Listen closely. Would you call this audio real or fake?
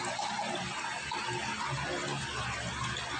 real